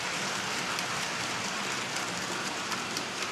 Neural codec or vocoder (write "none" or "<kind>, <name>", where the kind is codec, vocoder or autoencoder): vocoder, BigVGAN v2